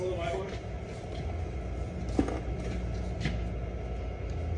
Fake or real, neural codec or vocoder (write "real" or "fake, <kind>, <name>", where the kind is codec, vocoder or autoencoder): real